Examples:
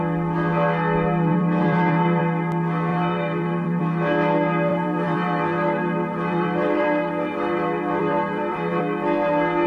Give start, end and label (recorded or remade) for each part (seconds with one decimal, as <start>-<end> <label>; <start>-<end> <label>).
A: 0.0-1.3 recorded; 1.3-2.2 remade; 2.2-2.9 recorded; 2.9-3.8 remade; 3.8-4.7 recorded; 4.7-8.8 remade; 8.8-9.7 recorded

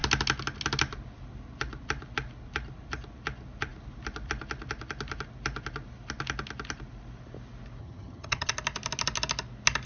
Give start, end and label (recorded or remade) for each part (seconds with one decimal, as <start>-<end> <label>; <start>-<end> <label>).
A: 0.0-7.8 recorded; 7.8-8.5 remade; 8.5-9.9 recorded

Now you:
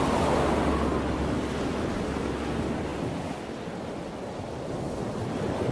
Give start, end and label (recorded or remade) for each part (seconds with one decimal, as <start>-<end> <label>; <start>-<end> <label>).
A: 0.0-1.7 recorded; 1.7-2.3 remade; 2.3-5.7 recorded